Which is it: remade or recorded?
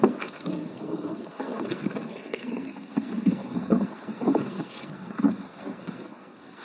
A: remade